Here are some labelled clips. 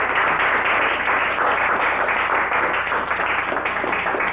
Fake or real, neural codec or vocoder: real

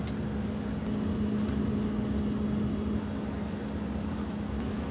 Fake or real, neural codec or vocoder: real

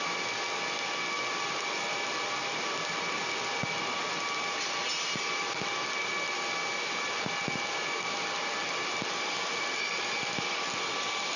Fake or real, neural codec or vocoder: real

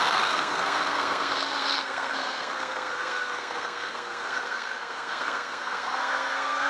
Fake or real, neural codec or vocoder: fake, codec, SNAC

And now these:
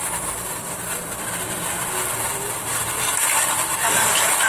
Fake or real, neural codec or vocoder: fake, vocoder, BigVGAN v2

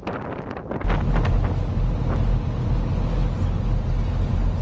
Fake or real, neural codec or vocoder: real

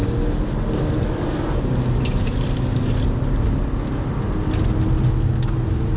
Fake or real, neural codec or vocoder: real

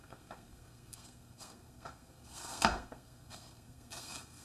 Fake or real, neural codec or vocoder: fake, codec, SNAC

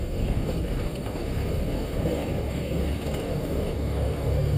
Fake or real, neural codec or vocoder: fake, codec, DAC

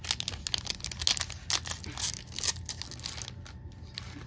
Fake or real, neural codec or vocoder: real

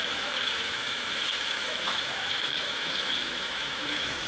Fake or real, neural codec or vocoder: fake, autoencoder, DAC-VAE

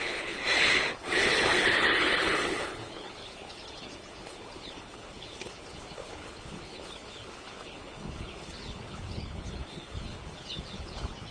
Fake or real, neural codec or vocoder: fake, codec, HILCodec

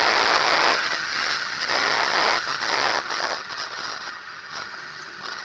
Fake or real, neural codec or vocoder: fake, vocoder, HiFi-GAN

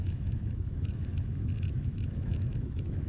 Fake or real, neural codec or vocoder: fake, autoencoder, DAC-VAE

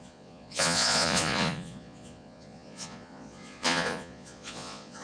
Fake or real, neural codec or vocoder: fake, vocoder, Vocos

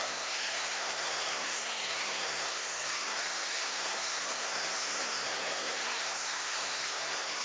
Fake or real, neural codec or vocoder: fake, codec, SNAC